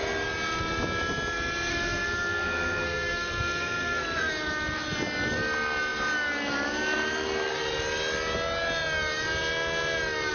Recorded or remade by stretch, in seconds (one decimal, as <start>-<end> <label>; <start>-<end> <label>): 0.0-1.7 recorded; 1.7-4.3 remade; 4.3-10.3 recorded